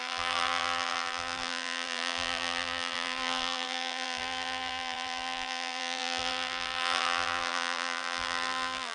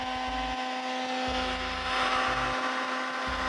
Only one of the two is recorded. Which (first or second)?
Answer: second